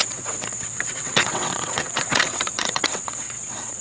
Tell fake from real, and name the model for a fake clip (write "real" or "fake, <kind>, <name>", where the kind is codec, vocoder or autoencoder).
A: fake, vocoder, WaveNeXt